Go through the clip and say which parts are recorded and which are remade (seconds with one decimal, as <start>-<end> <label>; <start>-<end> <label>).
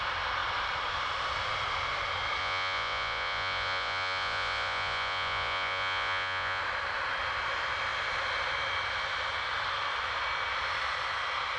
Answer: 0.0-2.4 recorded; 2.4-6.6 remade; 6.6-11.6 recorded